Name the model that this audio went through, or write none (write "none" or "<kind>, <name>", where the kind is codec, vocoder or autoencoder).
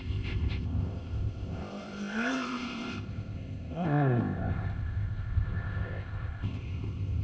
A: codec, ZipCodec